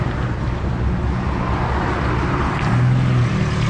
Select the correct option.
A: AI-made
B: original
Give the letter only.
B